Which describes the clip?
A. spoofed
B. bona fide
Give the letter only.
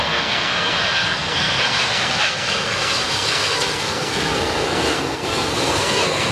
A